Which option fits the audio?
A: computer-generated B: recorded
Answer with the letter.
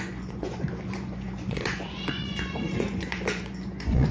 A